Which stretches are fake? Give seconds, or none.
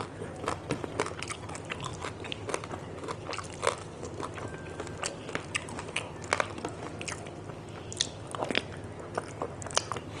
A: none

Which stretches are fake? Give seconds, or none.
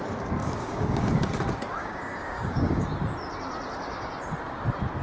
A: 0.4-1.1 (codec, DAC); 1.8-2.8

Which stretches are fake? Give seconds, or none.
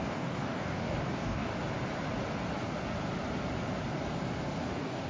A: 0.0-1.5 (codec, DAC); 4.6-5.1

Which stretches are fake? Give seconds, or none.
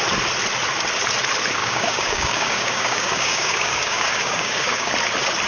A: 1.6-4.9 (codec, DAC)